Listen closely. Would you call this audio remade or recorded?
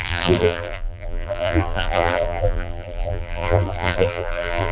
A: remade